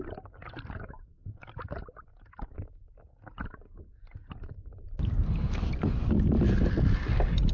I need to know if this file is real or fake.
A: real